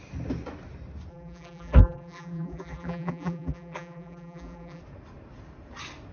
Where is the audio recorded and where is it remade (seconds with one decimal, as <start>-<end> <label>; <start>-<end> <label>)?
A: 0.0-1.1 recorded; 1.1-4.8 remade; 4.8-6.1 recorded